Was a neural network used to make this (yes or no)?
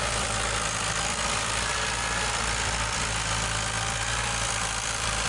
yes